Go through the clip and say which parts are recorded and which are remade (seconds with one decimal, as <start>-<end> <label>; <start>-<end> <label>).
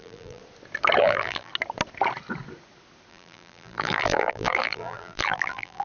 0.0-0.4 remade; 0.4-1.0 recorded; 1.0-1.5 remade; 1.5-3.1 recorded; 3.1-5.8 remade